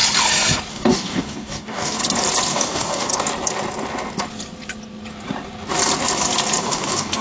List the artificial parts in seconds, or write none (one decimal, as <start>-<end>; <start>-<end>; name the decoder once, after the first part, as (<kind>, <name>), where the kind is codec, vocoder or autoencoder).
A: 0.7-2.0 (codec, DAC); 2.5-3.1; 6.6-7.2